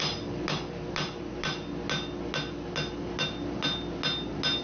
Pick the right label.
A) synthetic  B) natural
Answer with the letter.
B